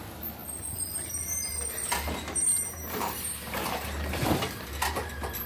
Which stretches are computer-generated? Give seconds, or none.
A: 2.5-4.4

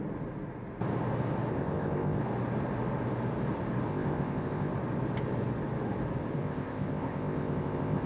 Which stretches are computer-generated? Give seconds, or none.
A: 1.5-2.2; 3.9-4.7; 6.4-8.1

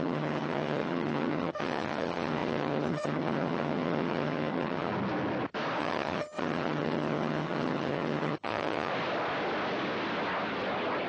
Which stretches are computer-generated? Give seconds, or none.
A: 0.0-4.9; 5.8-8.9

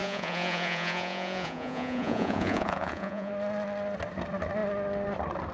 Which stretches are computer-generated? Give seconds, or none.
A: 0.0-3.3